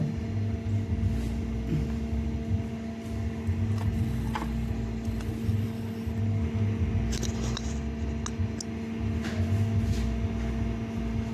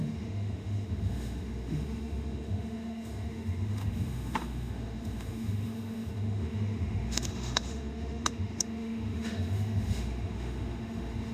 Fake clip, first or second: second